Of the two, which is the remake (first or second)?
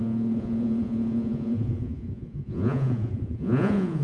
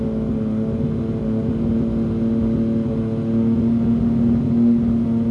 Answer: first